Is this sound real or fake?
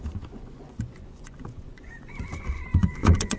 fake